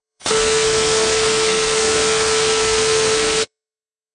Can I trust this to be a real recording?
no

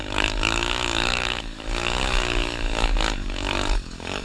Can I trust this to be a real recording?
no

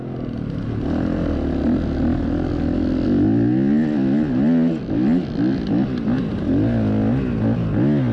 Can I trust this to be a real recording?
yes